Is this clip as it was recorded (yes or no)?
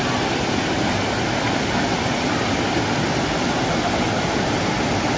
yes